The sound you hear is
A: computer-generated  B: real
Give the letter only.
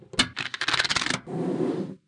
B